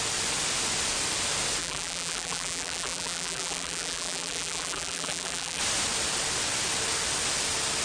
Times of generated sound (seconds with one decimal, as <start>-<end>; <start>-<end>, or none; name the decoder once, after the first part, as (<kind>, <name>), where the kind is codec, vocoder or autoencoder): 1.6-5.6 (vocoder, BigVGAN v2)